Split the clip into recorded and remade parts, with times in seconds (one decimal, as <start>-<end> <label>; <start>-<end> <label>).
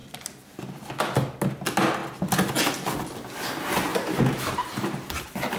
0.0-0.9 remade; 0.9-3.9 recorded; 3.9-5.0 remade; 5.0-5.6 recorded